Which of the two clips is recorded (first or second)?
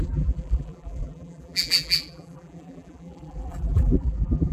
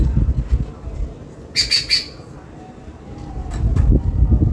second